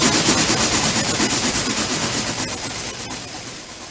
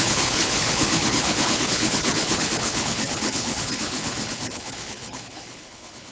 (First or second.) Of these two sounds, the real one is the first